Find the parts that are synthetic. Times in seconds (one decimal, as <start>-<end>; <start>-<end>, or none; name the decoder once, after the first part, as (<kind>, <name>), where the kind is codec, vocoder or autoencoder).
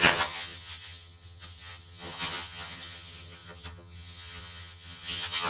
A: 0.0-5.5 (vocoder, HiFi-GAN)